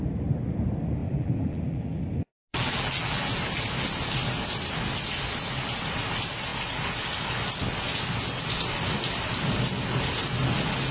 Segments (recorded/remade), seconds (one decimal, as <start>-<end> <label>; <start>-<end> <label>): 0.0-1.0 recorded; 1.0-2.0 remade; 2.0-2.5 recorded; 2.5-3.3 remade; 3.3-10.9 recorded